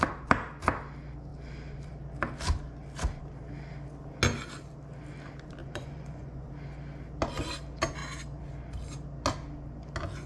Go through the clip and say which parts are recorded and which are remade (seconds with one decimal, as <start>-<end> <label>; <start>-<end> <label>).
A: 0.0-5.6 recorded; 5.6-6.5 remade; 6.5-10.3 recorded